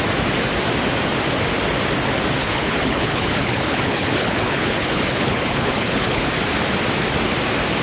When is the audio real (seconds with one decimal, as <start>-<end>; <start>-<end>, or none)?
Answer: 0.0-2.4; 6.3-7.8